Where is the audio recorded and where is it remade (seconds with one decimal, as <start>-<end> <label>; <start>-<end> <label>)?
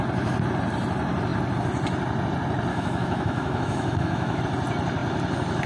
0.0-2.7 recorded; 2.7-4.4 remade; 4.4-5.7 recorded